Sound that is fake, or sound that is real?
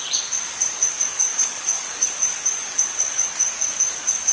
fake